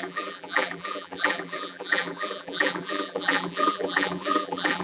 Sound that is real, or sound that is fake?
fake